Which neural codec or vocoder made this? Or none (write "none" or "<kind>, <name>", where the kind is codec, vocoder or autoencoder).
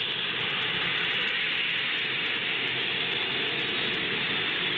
none